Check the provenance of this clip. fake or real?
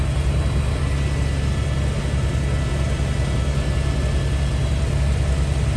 real